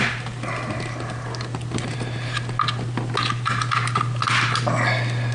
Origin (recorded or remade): recorded